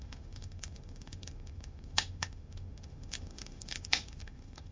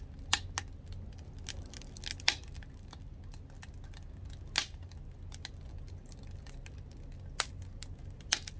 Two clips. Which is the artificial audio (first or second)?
first